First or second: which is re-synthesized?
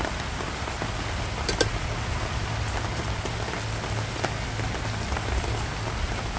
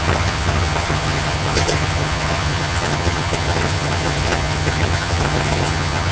second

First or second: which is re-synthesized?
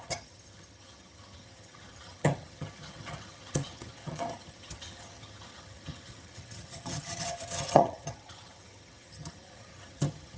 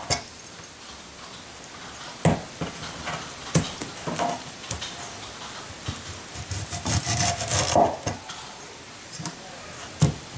first